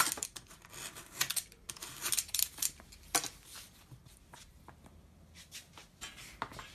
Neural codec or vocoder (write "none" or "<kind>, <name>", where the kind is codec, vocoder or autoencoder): none